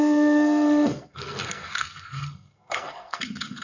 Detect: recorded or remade remade